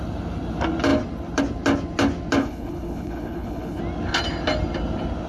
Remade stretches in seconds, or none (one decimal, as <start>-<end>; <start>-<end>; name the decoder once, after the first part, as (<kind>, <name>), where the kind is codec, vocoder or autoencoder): 2.4-3.8 (codec, HILCodec)